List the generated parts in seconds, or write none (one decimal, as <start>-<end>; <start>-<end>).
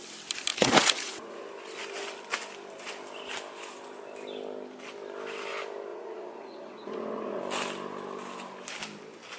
0.5-1.4; 5.9-7.4